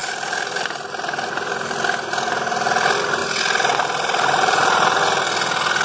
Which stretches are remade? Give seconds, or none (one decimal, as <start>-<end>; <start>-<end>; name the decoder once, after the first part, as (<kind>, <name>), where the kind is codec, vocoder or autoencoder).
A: 0.0-1.8 (vocoder, BigVGAN v2); 3.2-5.0